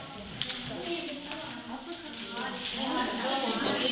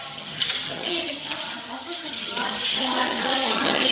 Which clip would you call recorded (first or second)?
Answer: first